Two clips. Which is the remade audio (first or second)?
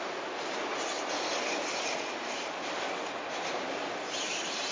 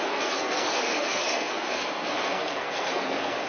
second